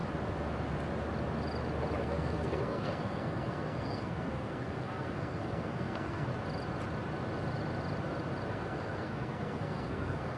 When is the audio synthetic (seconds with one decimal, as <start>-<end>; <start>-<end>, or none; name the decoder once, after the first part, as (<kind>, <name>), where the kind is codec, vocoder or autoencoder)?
2.0-6.3 (codec, SNAC); 8.5-10.4